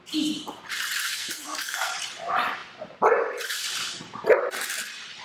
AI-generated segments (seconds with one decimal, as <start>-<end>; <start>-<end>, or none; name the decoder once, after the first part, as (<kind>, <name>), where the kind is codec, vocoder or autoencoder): 1.1-1.9 (codec, SNAC)